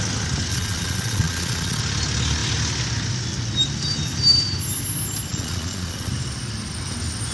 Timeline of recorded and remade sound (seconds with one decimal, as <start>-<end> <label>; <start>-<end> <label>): 0.0-0.5 recorded; 0.5-1.8 remade; 1.8-5.3 recorded; 5.3-6.1 remade; 6.1-7.3 recorded